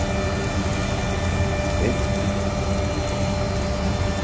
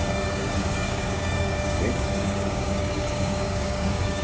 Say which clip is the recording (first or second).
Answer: first